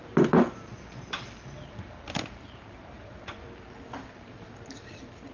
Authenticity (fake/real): fake